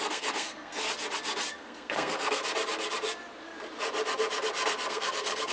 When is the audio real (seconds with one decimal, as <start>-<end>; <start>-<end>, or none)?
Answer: 0.9-1.5; 2.4-4.9